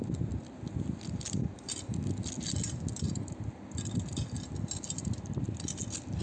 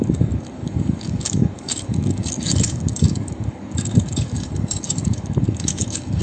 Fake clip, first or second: second